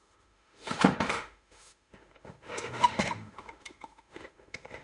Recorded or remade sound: remade